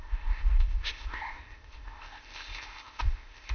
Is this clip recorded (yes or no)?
no